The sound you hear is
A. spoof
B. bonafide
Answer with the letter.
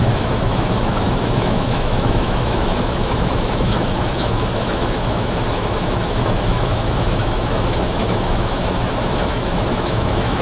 A